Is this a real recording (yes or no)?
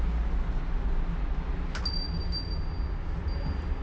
yes